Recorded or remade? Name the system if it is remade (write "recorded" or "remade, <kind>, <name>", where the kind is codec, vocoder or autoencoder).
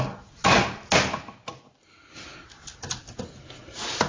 recorded